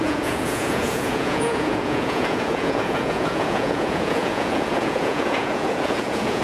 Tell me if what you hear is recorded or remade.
remade